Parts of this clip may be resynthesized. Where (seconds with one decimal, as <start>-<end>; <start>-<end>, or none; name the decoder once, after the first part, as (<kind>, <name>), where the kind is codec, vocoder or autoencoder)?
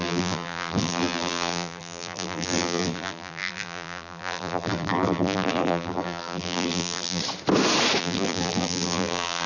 0.0-7.2 (vocoder, BigVGAN v2); 8.0-9.5